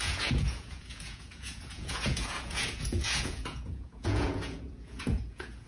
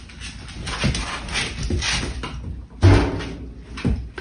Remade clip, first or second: first